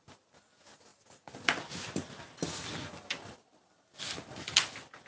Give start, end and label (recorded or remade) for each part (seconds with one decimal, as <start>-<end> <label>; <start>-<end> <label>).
0.0-5.1 recorded